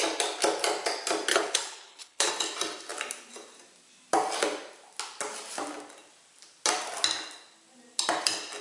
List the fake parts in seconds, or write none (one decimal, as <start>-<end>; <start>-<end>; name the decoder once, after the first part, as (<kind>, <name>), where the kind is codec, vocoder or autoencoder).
1.3-2.3 (codec, HILCodec)